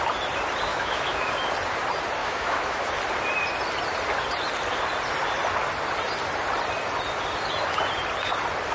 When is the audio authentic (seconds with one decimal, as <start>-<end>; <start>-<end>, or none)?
0.0-0.7; 1.3-2.2; 2.8-8.7